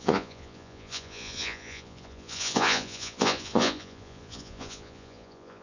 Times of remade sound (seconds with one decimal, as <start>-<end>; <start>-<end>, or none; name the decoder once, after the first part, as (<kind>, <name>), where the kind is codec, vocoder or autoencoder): 0.0-5.6 (vocoder, Vocos)